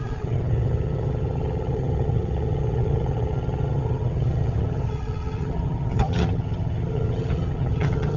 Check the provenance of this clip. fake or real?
fake